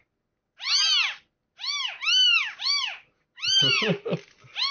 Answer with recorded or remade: recorded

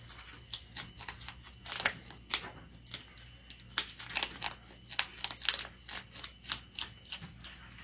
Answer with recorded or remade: recorded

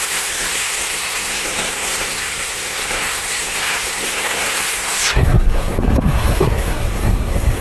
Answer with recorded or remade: remade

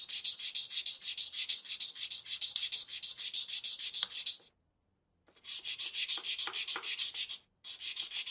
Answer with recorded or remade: recorded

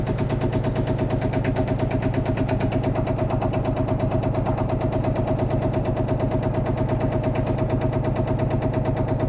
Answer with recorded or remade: recorded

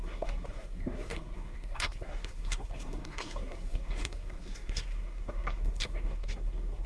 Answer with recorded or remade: remade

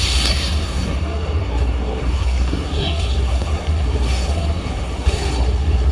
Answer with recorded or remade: remade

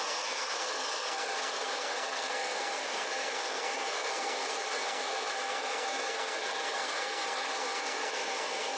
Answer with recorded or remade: remade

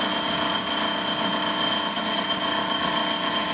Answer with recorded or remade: recorded